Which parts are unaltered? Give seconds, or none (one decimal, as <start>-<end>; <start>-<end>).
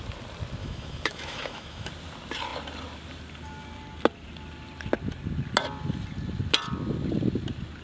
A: 0.0-0.6; 1.9-7.8